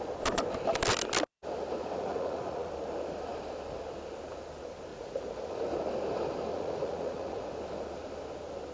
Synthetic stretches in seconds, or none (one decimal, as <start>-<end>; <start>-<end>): 1.8-2.7; 4.9-5.6; 6.5-7.5